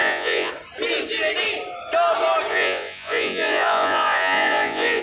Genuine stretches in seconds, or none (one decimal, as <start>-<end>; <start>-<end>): 0.5-2.5